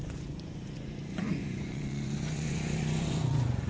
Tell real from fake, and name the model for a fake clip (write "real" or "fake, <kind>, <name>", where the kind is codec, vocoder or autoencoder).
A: fake, vocoder, Vocos